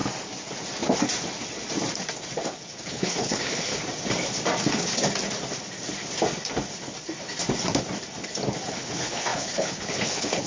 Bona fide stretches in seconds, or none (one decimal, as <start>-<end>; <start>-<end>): 0.0-2.9; 3.7-8.7